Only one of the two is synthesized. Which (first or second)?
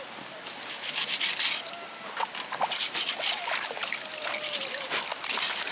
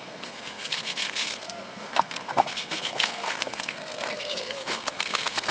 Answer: second